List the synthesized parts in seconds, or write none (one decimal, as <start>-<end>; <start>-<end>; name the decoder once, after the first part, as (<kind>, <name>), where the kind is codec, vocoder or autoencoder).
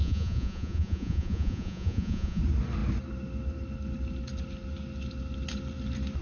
0.0-2.4 (vocoder, Vocos)